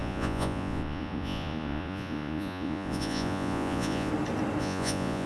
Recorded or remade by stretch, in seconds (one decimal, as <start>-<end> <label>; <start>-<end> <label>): 0.0-4.1 remade; 4.1-4.6 recorded; 4.6-5.3 remade